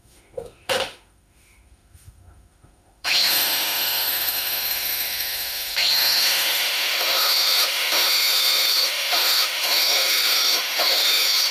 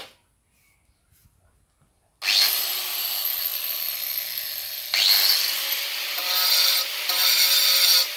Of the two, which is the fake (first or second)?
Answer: first